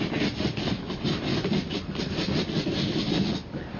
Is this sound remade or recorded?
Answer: remade